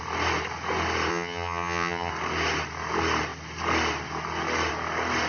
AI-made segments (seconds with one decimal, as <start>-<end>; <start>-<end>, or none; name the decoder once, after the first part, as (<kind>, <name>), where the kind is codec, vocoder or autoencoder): 1.1-2.1 (vocoder, HiFi-GAN)